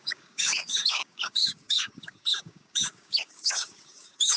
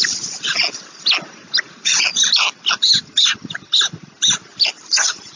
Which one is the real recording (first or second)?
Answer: second